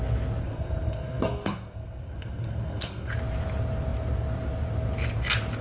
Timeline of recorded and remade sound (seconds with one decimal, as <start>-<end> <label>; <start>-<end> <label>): 0.0-0.4 recorded; 0.4-3.1 remade; 3.1-5.6 recorded